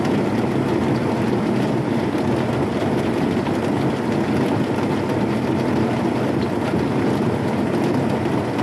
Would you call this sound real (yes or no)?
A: yes